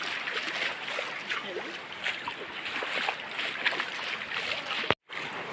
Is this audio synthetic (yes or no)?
no